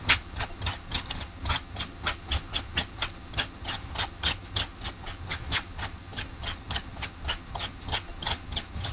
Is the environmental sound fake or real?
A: fake